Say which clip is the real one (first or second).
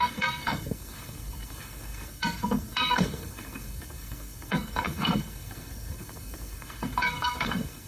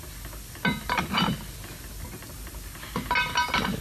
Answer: second